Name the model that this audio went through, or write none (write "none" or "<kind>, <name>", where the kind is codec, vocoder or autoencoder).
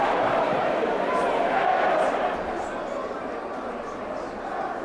none